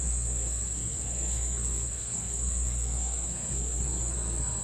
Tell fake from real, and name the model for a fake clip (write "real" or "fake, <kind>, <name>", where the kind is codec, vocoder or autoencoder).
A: fake, codec, SNAC